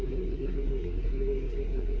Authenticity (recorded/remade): remade